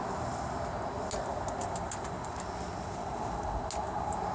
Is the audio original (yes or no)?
yes